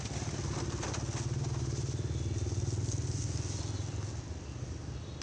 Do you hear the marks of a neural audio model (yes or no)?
no